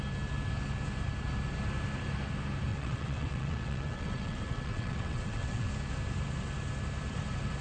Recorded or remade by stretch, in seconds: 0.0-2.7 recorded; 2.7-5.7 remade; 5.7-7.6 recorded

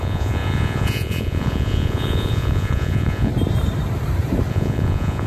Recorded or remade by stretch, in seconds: 0.0-3.3 remade; 3.3-4.5 recorded; 4.5-5.3 remade